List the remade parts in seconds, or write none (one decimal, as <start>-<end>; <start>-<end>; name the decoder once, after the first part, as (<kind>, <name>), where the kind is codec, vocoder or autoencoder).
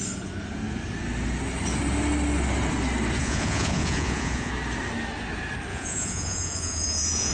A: 3.2-4.5 (vocoder, Vocos); 5.7-7.3